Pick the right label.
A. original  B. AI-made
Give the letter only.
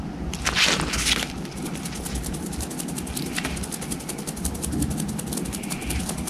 A